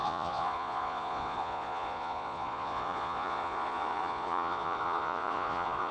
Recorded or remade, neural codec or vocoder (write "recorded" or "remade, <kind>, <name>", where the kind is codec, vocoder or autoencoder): remade, vocoder, Vocos